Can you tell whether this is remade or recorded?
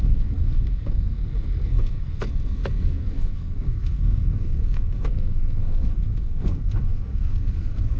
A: remade